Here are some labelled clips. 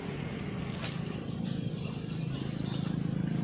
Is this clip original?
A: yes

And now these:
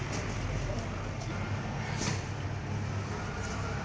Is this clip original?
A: yes